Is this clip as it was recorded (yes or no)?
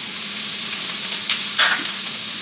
no